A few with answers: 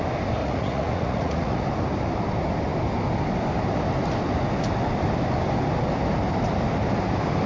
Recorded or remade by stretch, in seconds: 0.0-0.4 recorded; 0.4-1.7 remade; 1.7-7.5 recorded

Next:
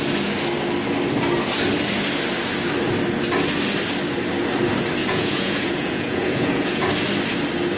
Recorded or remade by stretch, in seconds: 0.0-5.0 recorded; 5.0-6.9 remade; 6.9-7.8 recorded

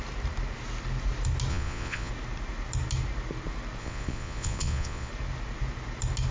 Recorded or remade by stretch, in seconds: 0.0-1.5 recorded; 1.5-2.1 remade; 2.1-3.8 recorded; 3.8-5.1 remade; 5.1-6.3 recorded

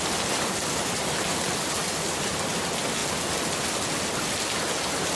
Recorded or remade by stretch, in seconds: 0.0-5.2 recorded

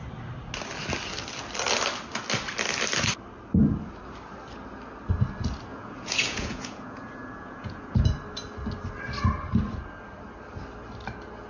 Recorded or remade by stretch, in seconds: 0.0-5.7 recorded; 5.7-8.0 remade; 8.0-11.5 recorded

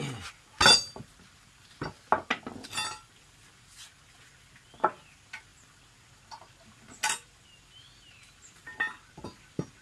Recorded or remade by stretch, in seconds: 0.0-9.8 recorded

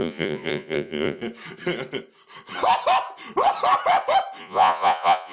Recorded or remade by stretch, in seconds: 0.0-1.2 remade; 1.2-4.4 recorded; 4.4-5.3 remade